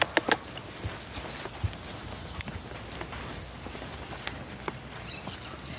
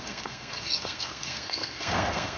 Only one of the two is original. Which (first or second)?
first